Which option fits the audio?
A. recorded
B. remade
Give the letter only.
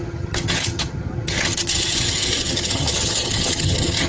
B